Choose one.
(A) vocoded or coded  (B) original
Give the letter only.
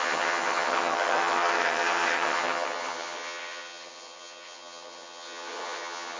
A